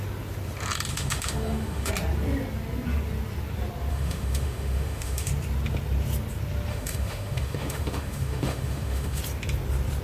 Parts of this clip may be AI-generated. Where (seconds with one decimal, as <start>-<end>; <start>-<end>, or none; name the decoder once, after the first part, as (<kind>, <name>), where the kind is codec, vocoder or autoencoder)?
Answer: 0.9-1.9 (autoencoder, DAC-VAE); 3.9-5.3; 6.7-9.2